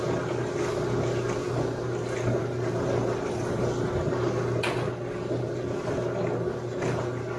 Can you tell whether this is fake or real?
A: real